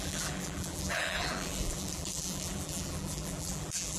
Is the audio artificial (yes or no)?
yes